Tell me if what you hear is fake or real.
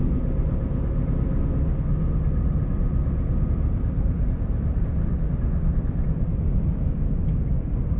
real